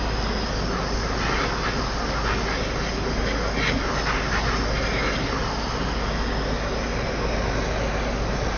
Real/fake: real